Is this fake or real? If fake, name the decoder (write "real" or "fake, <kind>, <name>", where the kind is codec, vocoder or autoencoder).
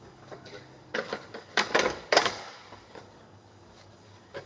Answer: fake, codec, DAC